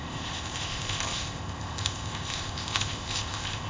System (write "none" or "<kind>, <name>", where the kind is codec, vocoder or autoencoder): codec, ZipCodec